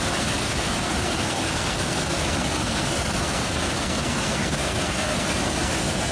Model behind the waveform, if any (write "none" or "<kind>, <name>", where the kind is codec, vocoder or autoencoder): codec, SNAC